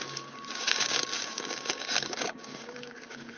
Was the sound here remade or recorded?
remade